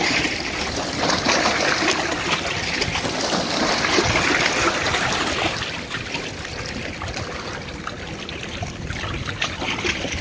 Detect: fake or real real